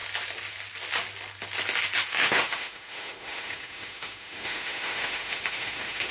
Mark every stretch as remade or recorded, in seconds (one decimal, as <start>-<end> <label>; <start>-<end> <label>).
0.0-2.1 recorded; 2.1-6.1 remade